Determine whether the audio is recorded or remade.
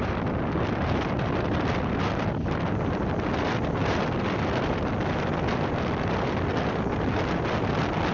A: remade